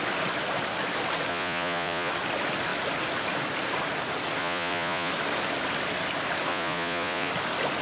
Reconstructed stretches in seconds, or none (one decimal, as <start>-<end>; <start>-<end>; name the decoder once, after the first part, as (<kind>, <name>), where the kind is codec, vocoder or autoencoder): 1.3-2.1 (vocoder, Vocos); 4.4-5.1; 6.5-7.3